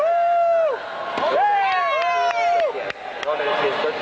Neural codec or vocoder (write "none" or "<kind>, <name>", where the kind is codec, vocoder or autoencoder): none